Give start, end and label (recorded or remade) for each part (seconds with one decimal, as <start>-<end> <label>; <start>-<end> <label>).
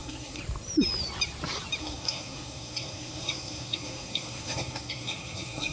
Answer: 0.0-0.4 remade; 0.4-1.8 recorded; 1.8-5.7 remade